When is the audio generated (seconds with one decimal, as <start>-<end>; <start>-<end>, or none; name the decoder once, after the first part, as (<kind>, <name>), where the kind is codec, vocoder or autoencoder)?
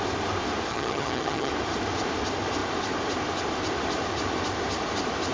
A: 0.7-1.5 (vocoder, HiFi-GAN)